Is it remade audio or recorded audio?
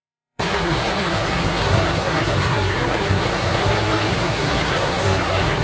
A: remade